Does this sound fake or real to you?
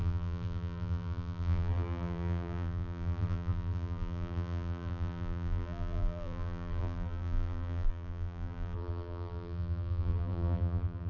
fake